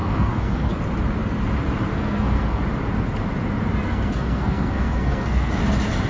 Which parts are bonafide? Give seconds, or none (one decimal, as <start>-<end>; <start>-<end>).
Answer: 0.7-1.9; 2.6-3.9; 5.5-6.1